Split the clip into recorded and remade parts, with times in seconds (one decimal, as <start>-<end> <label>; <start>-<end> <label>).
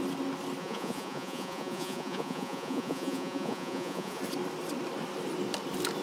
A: 0.0-0.6 recorded; 0.6-4.2 remade; 4.2-6.0 recorded